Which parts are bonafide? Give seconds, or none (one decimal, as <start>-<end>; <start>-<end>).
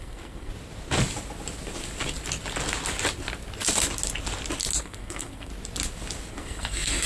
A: 0.5-4.8; 5.5-6.3